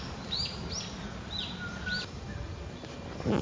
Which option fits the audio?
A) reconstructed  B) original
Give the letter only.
B